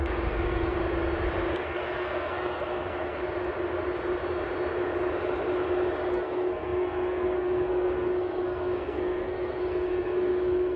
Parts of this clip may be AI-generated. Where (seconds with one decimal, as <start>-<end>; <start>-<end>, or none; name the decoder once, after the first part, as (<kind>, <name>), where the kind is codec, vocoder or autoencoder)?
0.0-0.8 (codec, SNAC); 1.5-3.2; 6.1-10.8